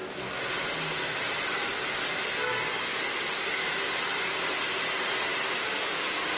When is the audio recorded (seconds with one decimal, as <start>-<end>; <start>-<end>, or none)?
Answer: 0.0-6.4